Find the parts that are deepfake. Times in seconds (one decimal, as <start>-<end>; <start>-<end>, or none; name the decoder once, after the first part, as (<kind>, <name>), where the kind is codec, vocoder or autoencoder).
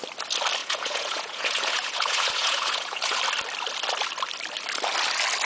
0.6-3.2 (vocoder, Vocos)